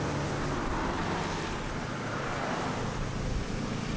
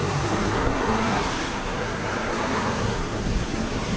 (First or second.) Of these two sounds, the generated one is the second